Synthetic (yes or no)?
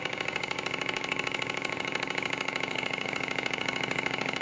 yes